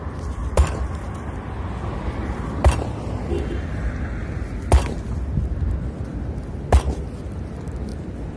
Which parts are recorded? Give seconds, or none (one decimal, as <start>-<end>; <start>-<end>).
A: 0.0-0.4; 3.5-7.9